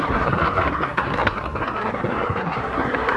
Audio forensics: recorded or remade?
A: remade